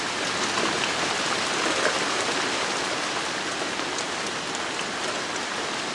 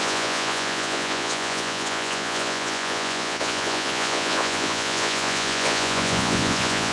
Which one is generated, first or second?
second